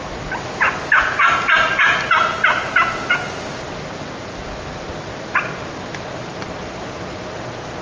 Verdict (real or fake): real